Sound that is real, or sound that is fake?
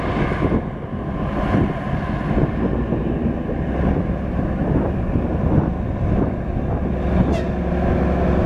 real